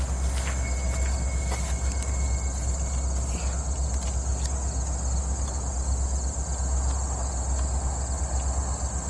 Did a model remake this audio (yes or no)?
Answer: no